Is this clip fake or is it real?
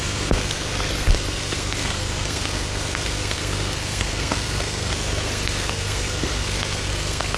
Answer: fake